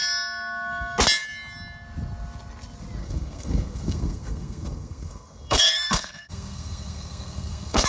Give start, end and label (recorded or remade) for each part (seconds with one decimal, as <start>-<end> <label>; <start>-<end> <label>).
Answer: 0.0-3.0 recorded; 3.0-7.9 remade